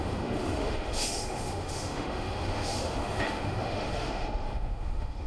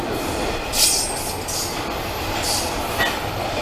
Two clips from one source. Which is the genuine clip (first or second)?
second